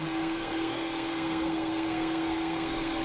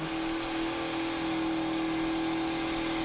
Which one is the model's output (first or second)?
first